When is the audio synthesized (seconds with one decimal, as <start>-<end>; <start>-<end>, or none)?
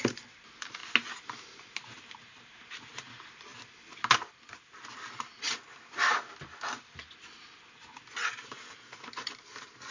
0.0-0.8; 1.4-3.5; 8.3-9.9